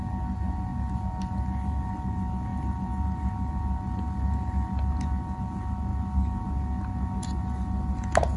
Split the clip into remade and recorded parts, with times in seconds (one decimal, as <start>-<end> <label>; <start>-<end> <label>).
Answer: 0.0-8.4 recorded